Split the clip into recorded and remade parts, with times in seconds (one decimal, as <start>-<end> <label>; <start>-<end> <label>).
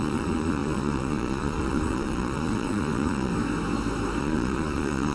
0.0-3.3 remade; 3.3-4.2 recorded; 4.2-5.1 remade